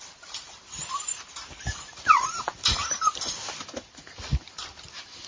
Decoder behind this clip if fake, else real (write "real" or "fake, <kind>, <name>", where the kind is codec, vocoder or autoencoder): fake, vocoder, BigVGAN v2